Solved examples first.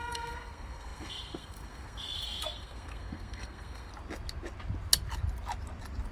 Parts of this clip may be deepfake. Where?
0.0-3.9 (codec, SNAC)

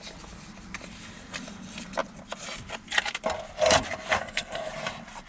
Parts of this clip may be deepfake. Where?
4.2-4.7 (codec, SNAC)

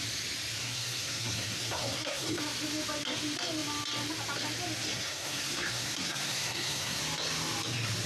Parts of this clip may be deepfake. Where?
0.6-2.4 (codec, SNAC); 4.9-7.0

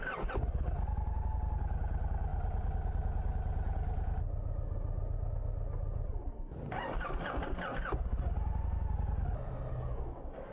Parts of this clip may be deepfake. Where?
none

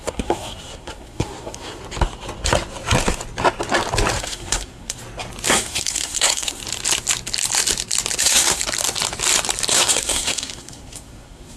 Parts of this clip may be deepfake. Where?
0.0-1.8 (codec, SNAC); 4.2-5.0; 5.5-6.6; 8.2-8.6; 9.7-11.6

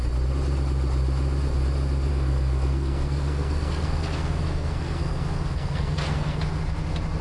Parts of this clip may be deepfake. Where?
2.1-6.4 (codec, SNAC)